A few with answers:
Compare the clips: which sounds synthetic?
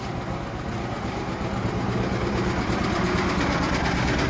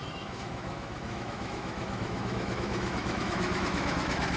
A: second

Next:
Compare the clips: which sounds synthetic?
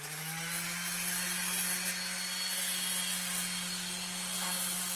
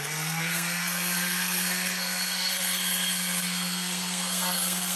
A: second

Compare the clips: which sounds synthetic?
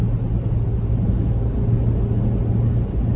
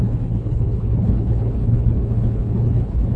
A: second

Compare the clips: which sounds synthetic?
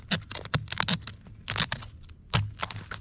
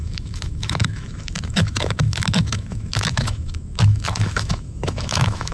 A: second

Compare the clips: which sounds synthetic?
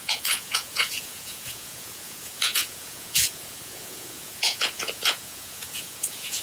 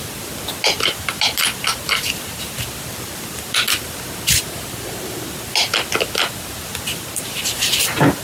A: first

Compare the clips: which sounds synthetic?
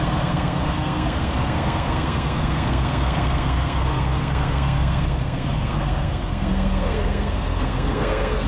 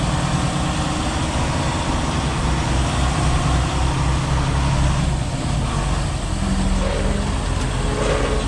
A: first